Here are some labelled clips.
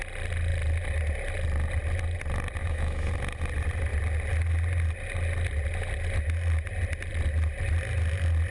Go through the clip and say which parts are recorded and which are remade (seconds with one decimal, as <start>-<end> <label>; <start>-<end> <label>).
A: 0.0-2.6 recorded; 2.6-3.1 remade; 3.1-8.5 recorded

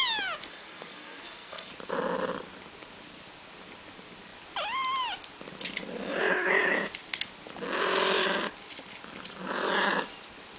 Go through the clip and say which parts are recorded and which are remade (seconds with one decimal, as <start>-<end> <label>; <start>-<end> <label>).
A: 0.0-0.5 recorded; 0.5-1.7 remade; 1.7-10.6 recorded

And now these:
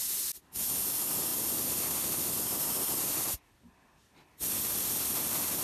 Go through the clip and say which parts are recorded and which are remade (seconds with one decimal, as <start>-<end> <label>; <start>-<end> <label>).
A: 0.0-5.6 recorded

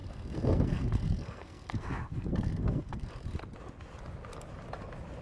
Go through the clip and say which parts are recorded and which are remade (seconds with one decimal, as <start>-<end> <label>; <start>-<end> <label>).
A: 0.0-3.1 remade; 3.1-5.2 recorded

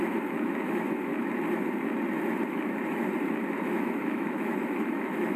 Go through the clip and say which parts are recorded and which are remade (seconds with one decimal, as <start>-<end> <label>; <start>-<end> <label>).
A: 0.0-1.1 remade; 1.1-2.5 recorded; 2.5-3.1 remade; 3.1-3.7 recorded; 3.7-5.4 remade

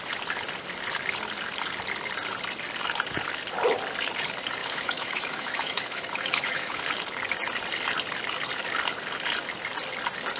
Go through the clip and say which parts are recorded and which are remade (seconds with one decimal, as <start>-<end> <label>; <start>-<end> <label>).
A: 0.0-4.6 recorded; 4.6-6.8 remade; 6.8-10.4 recorded

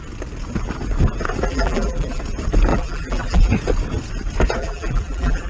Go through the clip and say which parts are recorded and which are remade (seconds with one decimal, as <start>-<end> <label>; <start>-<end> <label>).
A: 0.0-1.5 recorded; 1.5-2.2 remade; 2.2-2.7 recorded; 2.7-3.5 remade; 3.5-4.6 recorded; 4.6-5.5 remade